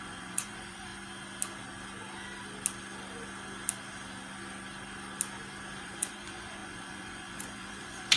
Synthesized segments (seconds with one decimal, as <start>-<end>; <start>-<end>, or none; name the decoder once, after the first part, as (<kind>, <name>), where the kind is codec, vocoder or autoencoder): 0.0-0.9 (vocoder, Vocos); 5.8-8.2